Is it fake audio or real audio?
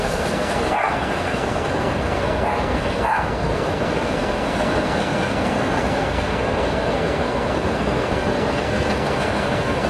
fake